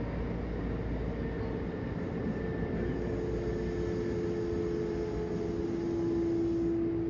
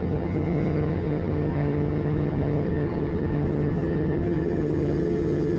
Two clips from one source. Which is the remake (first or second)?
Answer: second